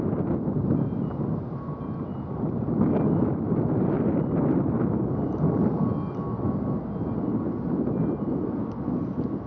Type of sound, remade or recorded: recorded